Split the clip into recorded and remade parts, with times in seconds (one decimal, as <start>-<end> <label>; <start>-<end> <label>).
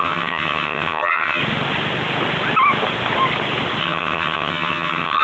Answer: 0.0-1.4 remade; 1.4-3.8 recorded; 3.8-5.2 remade